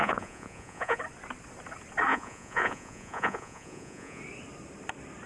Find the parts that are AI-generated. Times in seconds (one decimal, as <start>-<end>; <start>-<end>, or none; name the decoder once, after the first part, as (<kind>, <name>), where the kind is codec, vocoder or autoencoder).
0.0-1.0 (vocoder, Vocos); 2.1-4.2